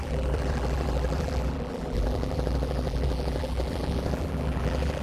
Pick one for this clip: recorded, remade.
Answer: remade